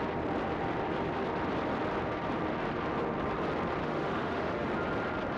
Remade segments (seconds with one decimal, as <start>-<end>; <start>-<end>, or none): 3.8-4.7